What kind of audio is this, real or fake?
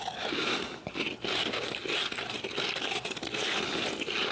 real